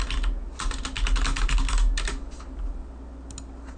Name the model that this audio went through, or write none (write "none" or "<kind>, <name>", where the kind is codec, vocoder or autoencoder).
none